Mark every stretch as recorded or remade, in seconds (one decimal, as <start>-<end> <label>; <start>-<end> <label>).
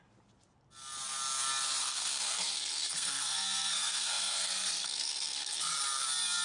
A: 0.0-1.8 recorded; 1.8-5.6 remade; 5.6-6.4 recorded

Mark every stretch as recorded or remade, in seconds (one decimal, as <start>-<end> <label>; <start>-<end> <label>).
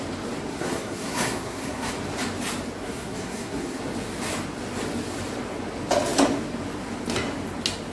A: 0.0-0.5 recorded; 0.5-1.9 remade; 1.9-2.8 recorded; 2.8-3.8 remade; 3.8-7.9 recorded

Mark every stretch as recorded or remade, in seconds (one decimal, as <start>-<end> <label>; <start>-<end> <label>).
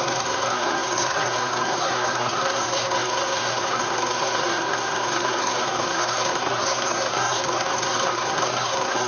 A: 0.0-9.1 remade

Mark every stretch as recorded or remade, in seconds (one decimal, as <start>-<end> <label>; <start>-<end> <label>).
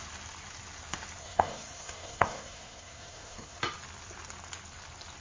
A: 0.0-1.2 recorded; 1.2-3.6 remade; 3.6-5.2 recorded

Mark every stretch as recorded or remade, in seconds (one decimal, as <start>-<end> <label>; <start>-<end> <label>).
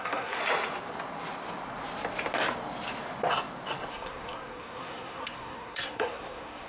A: 0.0-0.4 remade; 0.4-3.9 recorded; 3.9-6.7 remade